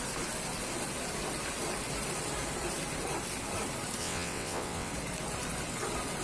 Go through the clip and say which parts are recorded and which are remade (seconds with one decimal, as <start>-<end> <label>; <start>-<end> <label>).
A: 0.0-4.0 recorded; 4.0-4.9 remade; 4.9-6.2 recorded